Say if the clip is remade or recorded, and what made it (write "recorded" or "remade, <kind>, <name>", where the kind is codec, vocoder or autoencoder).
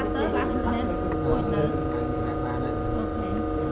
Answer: recorded